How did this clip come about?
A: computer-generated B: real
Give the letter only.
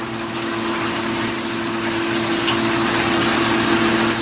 B